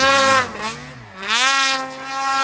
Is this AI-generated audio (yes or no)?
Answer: no